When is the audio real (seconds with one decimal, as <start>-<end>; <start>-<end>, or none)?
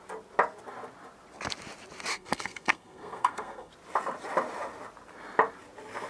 0.0-2.1; 3.7-6.1